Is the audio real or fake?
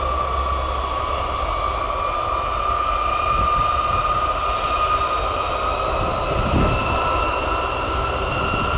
real